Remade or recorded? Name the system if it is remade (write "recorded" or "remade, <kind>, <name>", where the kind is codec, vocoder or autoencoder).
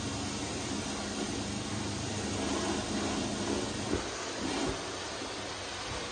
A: recorded